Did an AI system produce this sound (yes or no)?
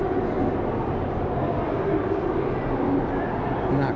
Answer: no